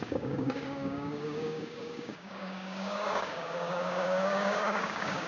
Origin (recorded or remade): remade